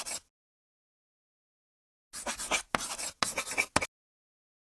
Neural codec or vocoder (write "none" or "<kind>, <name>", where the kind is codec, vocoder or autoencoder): none